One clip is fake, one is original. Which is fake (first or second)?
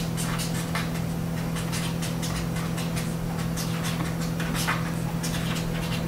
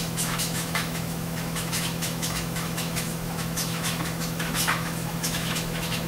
second